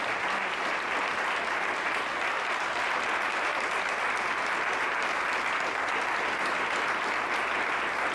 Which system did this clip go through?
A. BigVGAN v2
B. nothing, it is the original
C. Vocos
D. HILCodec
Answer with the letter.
B